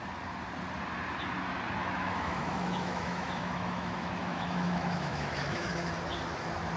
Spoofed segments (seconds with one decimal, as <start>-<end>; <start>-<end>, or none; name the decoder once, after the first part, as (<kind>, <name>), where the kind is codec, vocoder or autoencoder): 1.8-5.9 (autoencoder, DAC-VAE)